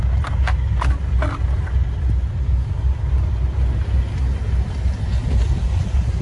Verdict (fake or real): real